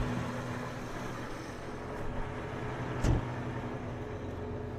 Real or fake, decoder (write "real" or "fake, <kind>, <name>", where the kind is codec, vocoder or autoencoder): real